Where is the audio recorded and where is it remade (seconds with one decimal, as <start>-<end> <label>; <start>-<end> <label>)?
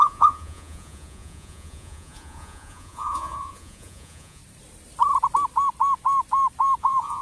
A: 0.0-4.4 remade; 4.4-6.8 recorded; 6.8-7.2 remade